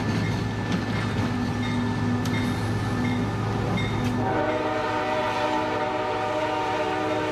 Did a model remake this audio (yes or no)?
no